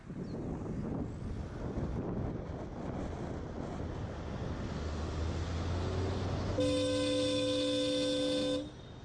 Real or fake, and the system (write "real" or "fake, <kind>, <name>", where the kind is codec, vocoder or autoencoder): real